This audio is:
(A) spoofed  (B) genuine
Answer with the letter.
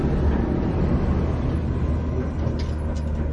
B